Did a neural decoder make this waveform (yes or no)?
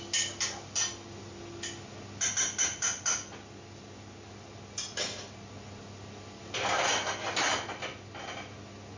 no